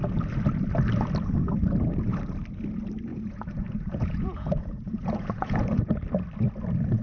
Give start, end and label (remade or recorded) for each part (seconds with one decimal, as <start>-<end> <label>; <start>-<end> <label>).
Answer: 0.0-3.1 recorded; 3.1-5.8 remade; 5.8-7.0 recorded